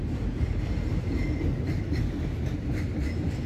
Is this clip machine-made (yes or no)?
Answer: no